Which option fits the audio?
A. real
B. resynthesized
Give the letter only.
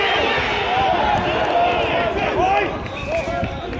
A